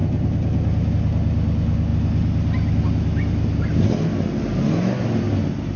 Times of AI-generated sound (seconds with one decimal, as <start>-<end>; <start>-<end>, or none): none